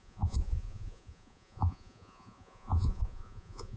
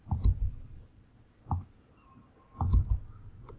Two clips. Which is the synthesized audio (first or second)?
first